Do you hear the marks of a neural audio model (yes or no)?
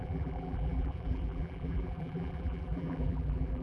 yes